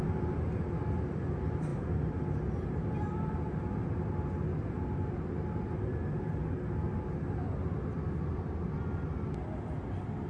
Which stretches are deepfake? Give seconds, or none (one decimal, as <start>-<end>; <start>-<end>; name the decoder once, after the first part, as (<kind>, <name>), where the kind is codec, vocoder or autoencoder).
none